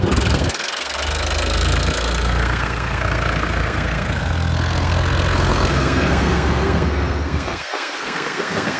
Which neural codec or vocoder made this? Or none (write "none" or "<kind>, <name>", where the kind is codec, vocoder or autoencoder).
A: codec, SNAC